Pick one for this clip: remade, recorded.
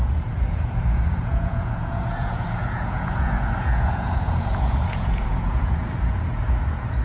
remade